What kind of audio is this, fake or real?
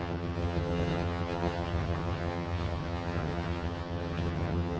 fake